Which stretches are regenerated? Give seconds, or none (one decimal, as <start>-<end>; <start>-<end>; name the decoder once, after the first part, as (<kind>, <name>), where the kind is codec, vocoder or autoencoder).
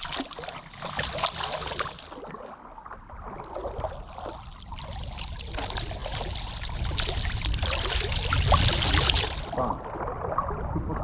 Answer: none